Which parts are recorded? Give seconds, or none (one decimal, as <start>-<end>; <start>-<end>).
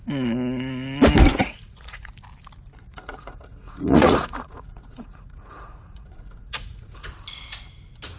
0.0-1.4; 2.1-2.9; 7.1-8.2